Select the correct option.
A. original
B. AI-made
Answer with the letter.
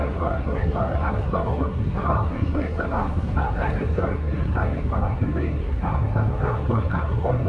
B